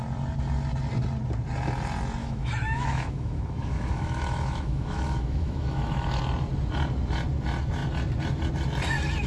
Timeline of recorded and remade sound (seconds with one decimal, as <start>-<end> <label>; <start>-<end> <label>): 0.0-2.2 recorded; 2.2-6.2 remade; 6.2-9.3 recorded